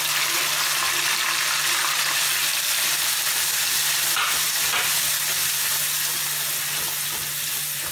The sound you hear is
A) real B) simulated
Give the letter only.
A